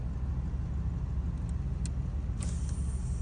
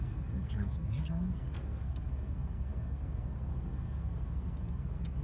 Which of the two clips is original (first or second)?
first